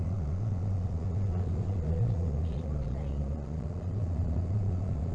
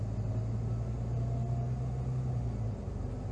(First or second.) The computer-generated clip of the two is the first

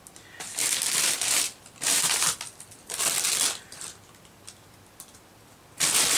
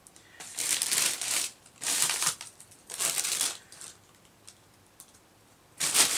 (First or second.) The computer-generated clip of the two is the second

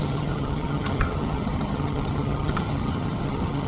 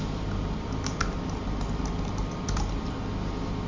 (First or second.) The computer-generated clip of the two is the first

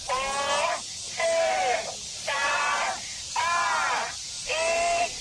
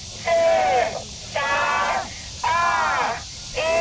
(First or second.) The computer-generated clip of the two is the first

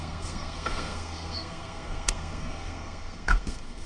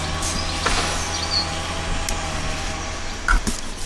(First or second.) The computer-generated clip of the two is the first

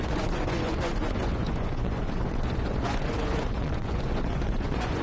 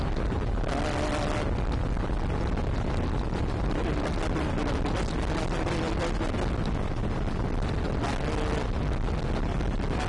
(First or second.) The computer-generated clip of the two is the first